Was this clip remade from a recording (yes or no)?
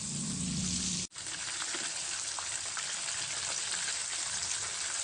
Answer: no